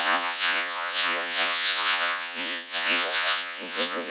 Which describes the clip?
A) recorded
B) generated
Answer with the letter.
B